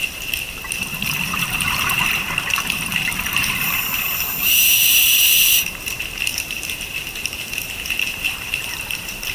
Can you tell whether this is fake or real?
fake